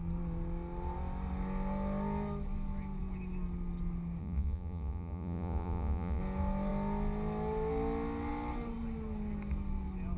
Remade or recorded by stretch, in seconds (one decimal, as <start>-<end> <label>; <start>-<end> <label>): 0.0-4.2 recorded; 4.2-6.2 remade; 6.2-10.2 recorded